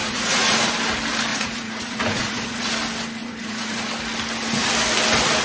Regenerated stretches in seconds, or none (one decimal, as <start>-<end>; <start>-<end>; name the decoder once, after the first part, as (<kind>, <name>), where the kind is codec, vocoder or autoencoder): 0.0-0.7 (vocoder, Vocos); 1.3-2.7; 3.2-3.9